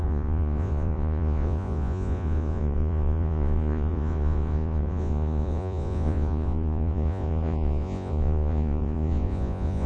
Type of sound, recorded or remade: remade